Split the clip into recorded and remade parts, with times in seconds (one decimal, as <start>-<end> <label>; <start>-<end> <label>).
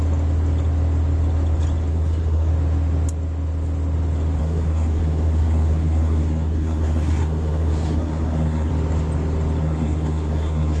0.0-1.9 recorded; 1.9-2.5 remade; 2.5-4.4 recorded; 4.4-8.7 remade; 8.7-9.6 recorded; 9.6-10.8 remade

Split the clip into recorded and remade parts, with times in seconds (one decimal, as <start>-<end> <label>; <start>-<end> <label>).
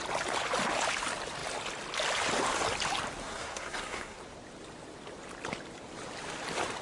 0.0-3.2 recorded; 3.2-4.2 remade; 4.2-6.8 recorded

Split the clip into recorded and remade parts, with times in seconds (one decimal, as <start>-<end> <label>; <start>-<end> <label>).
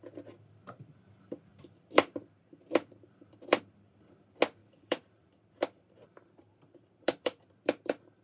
0.0-1.5 recorded; 1.5-3.6 remade; 3.6-4.6 recorded; 4.6-8.2 remade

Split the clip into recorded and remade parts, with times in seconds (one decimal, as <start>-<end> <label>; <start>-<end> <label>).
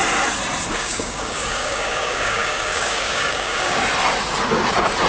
0.0-0.7 recorded; 0.7-3.8 remade; 3.8-5.1 recorded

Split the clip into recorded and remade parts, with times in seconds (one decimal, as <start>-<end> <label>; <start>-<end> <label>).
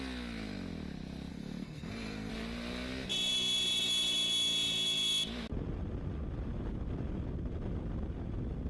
0.0-1.3 recorded; 1.3-2.3 remade; 2.3-8.7 recorded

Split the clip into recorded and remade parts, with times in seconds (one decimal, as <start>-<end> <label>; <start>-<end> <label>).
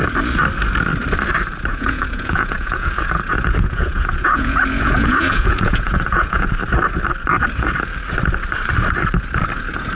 0.0-1.7 recorded; 1.7-6.5 remade; 6.5-10.0 recorded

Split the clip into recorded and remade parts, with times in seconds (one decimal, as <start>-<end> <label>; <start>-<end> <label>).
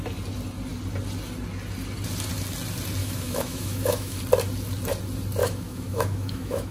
0.0-3.0 recorded; 3.0-4.2 remade; 4.2-5.4 recorded; 5.4-6.7 remade